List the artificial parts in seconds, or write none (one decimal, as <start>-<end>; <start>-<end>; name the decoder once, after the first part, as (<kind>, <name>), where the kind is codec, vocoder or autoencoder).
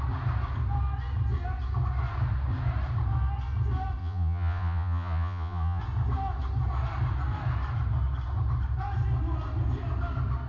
4.0-5.8 (vocoder, Vocos)